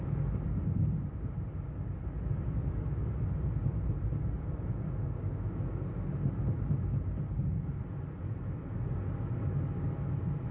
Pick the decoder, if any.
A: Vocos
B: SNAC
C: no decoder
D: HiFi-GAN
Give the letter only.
C